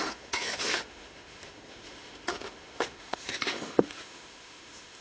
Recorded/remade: remade